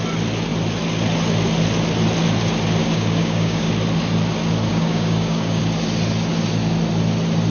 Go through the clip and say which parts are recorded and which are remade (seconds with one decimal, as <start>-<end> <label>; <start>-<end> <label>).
0.0-2.8 recorded; 2.8-3.7 remade; 3.7-4.7 recorded; 4.7-5.6 remade; 5.6-7.5 recorded